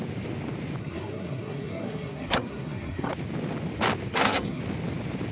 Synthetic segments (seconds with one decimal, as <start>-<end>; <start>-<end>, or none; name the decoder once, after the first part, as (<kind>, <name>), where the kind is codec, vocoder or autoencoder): 0.8-3.1 (codec, SNAC); 4.1-4.6